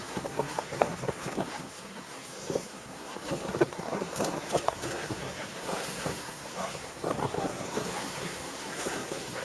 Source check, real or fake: fake